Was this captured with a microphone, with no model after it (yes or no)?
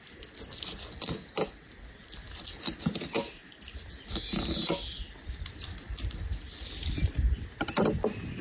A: yes